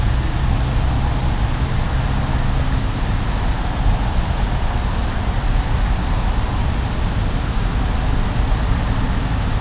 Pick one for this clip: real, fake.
real